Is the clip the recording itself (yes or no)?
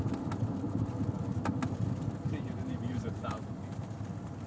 yes